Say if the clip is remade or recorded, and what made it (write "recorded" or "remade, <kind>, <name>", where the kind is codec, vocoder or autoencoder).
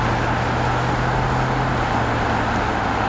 recorded